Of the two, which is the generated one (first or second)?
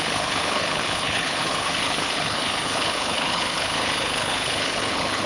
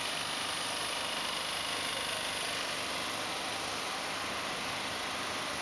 first